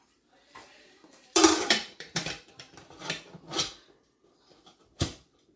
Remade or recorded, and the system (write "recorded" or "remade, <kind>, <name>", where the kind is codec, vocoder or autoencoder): remade, vocoder, BigVGAN v2